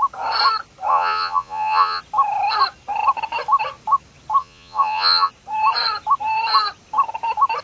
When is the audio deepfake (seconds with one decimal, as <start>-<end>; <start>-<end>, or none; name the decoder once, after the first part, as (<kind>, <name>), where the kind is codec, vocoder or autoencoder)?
0.9-2.0 (vocoder, Vocos); 4.4-5.3